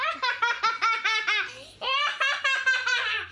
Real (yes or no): yes